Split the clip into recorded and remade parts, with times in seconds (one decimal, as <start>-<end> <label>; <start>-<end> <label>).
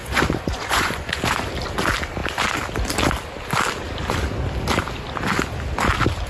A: 0.0-1.2 remade; 1.2-6.3 recorded